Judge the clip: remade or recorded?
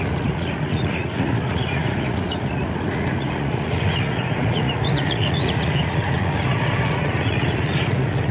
remade